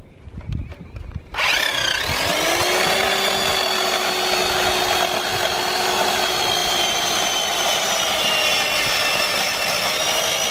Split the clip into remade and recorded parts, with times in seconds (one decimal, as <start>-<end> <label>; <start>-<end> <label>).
0.0-0.6 recorded; 0.6-1.7 remade; 1.7-6.6 recorded; 6.6-7.8 remade; 7.8-10.5 recorded